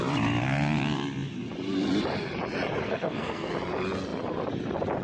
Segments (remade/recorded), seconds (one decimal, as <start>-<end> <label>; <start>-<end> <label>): 0.0-2.8 recorded; 2.8-3.5 remade; 3.5-5.0 recorded